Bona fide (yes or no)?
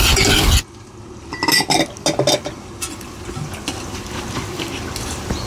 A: yes